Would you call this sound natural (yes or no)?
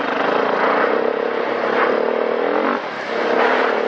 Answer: yes